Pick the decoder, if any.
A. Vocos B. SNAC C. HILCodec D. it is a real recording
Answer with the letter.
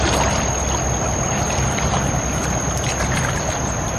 D